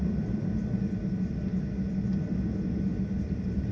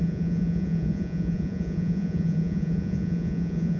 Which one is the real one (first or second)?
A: first